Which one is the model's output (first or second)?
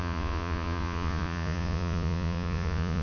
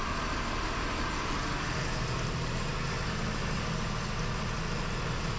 first